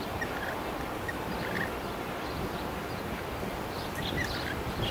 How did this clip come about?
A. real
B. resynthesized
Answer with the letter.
A